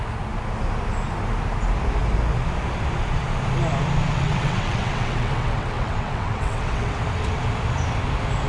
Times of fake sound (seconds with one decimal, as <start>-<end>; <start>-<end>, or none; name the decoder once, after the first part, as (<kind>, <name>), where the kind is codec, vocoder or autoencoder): 4.1-7.0 (vocoder, WaveNeXt)